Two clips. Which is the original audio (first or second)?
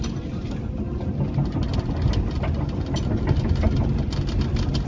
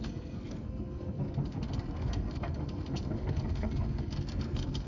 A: first